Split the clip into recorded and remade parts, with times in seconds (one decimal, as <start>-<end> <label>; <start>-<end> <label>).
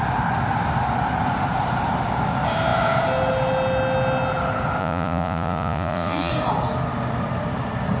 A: 0.0-4.8 recorded; 4.8-6.3 remade; 6.3-8.0 recorded